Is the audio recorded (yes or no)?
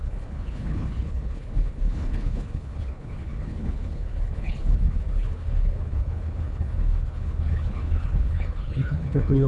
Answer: no